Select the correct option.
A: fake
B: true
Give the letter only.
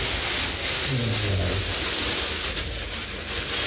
B